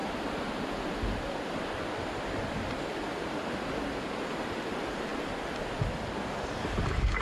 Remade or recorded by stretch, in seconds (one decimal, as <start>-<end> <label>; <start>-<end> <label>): 0.0-7.2 recorded